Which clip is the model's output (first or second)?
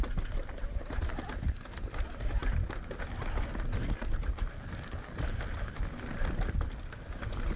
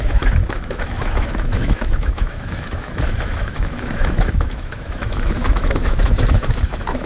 second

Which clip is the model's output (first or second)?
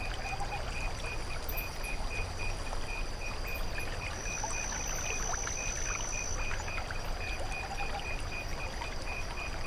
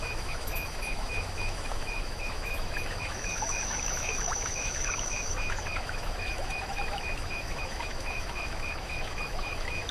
second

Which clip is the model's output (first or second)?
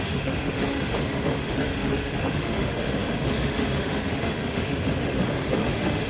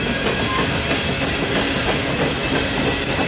first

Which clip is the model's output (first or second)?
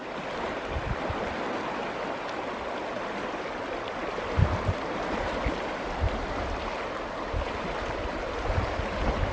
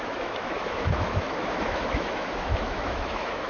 second